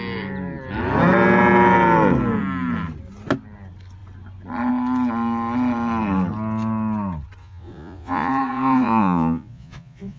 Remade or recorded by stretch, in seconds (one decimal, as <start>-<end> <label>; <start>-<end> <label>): 0.0-7.4 recorded; 7.4-10.2 remade